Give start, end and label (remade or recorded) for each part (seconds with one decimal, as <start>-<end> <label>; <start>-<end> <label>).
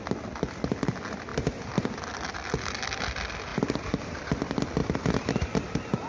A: 0.0-1.3 recorded; 1.3-1.9 remade; 1.9-3.5 recorded; 3.5-4.3 remade; 4.3-4.8 recorded; 4.8-6.1 remade